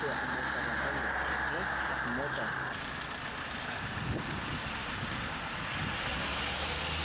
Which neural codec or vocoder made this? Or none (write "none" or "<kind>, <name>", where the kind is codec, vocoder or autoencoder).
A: none